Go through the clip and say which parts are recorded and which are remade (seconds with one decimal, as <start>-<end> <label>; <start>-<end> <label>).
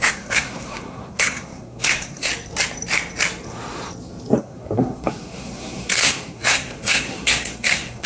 0.0-2.3 remade; 2.3-4.4 recorded; 4.4-8.1 remade